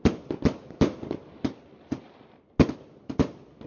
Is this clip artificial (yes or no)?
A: no